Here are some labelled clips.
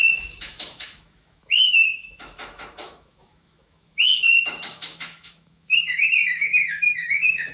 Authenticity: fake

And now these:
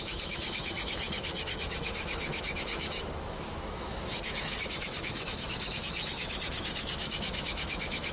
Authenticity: fake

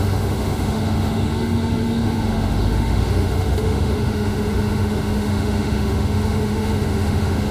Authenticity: fake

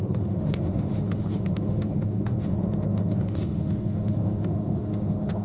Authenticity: fake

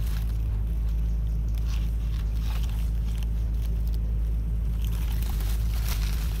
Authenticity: real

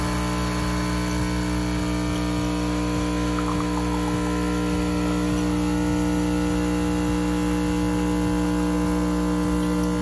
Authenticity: real